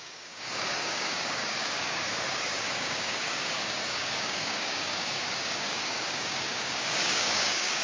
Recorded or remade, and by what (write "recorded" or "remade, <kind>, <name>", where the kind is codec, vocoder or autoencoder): remade, codec, DAC